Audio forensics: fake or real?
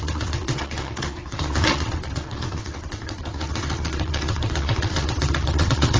fake